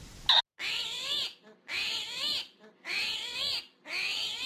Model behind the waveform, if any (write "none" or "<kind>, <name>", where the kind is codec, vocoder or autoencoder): none